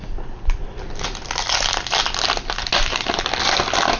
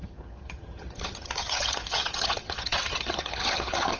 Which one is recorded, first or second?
first